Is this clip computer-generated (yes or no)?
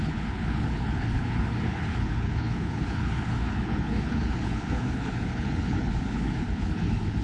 yes